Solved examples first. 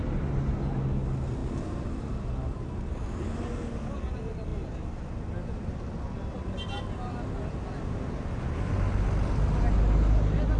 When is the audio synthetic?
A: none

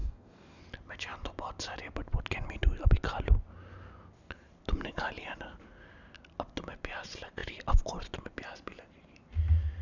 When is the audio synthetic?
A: 0.0-0.6

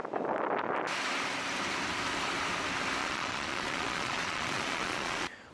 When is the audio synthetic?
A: 3.0-5.5

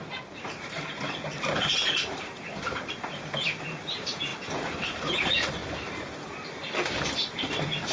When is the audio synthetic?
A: 0.0-5.6; 7.3-7.9

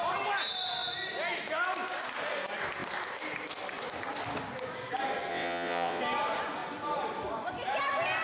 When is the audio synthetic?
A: 5.3-6.0